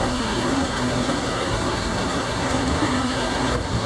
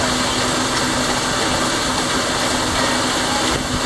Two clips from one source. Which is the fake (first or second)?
first